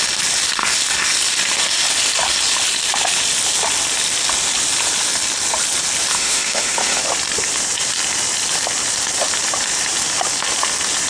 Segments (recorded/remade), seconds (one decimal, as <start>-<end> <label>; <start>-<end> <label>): 0.0-6.1 recorded; 6.1-7.0 remade; 7.0-11.1 recorded